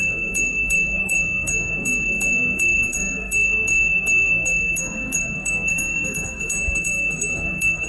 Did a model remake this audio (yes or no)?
yes